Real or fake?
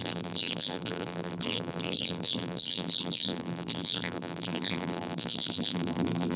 fake